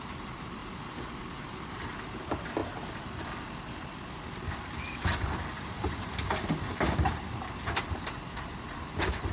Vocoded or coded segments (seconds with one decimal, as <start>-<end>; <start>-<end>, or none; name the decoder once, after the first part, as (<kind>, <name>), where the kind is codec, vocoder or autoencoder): 0.0-0.6 (vocoder, BigVGAN v2); 1.2-9.3